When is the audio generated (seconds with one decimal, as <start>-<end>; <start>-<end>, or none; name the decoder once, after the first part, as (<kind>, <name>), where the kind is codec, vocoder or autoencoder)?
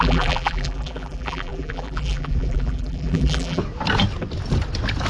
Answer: 0.0-3.6 (vocoder, BigVGAN v2)